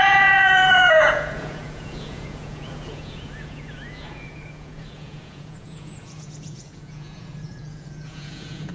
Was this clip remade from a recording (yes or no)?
yes